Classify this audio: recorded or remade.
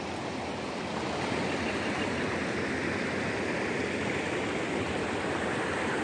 recorded